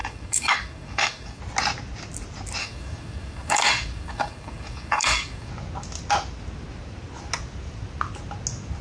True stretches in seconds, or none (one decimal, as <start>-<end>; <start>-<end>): 1.4-2.6; 5.5-8.8